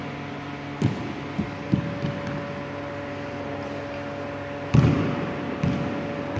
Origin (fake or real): real